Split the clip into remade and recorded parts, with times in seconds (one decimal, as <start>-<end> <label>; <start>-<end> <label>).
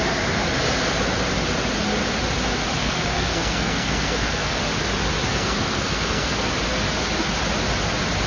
0.0-2.8 recorded; 2.8-4.6 remade; 4.6-5.3 recorded; 5.3-6.5 remade; 6.5-8.3 recorded